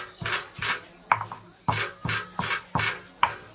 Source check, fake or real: real